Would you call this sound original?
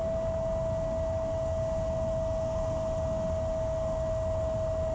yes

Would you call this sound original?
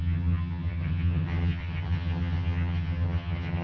no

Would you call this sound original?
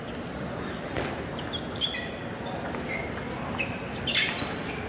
yes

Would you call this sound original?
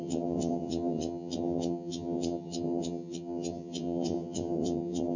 no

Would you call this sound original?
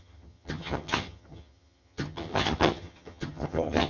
no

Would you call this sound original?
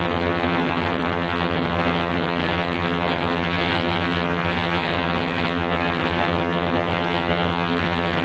no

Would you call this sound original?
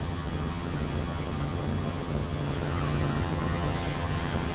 no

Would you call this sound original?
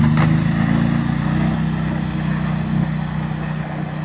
yes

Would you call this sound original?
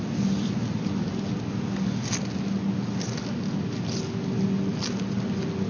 yes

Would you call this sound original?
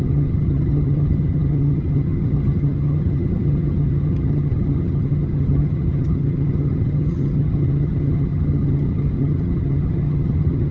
no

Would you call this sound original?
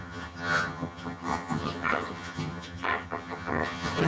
no